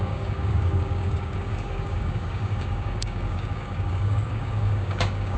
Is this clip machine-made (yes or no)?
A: yes